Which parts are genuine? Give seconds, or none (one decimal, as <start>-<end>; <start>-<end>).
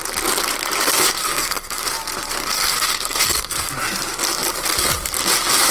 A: 0.0-1.2; 1.9-2.4; 3.7-5.7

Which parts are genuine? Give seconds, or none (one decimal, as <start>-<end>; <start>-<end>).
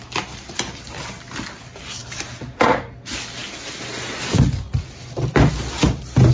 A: 0.0-6.3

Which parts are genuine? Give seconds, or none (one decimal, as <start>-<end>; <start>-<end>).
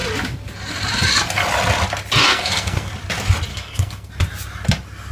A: 0.0-2.3; 2.9-3.5; 4.1-5.1